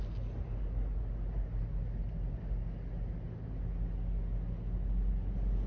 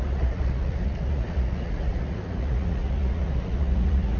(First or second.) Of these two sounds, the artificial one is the second